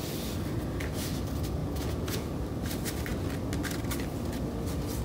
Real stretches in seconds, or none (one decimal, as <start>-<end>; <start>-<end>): 0.0-1.6; 2.3-5.0